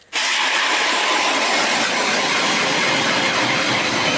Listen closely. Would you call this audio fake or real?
real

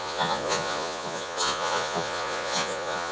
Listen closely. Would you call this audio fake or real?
fake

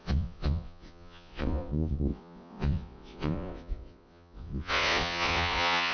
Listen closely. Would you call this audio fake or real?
fake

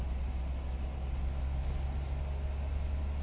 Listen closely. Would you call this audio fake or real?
real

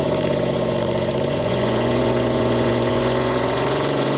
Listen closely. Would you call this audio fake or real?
fake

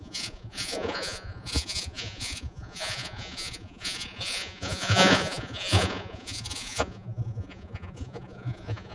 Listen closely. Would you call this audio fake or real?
fake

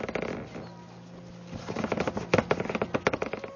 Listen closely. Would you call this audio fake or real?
real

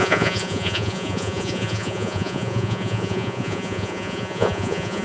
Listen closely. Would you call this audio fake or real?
fake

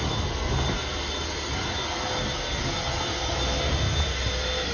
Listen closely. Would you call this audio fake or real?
real